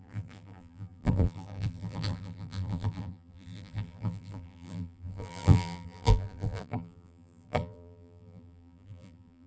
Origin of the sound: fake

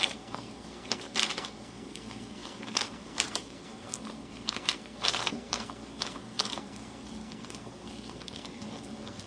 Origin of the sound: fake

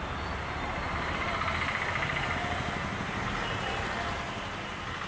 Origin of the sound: real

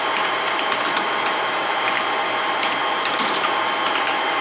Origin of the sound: fake